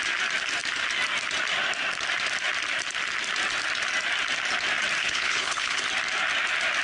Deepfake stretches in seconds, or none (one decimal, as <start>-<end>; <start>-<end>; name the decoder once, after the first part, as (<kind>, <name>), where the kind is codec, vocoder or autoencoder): 5.0-5.8 (codec, HILCodec)